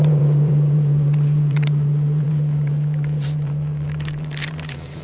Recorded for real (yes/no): no